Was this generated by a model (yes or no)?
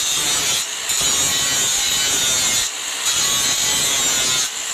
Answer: no